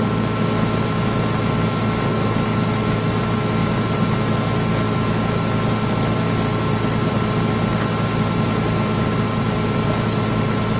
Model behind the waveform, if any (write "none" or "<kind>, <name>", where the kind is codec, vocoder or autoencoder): none